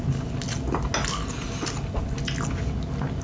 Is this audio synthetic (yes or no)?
no